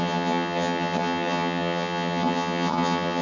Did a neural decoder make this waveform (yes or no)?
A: yes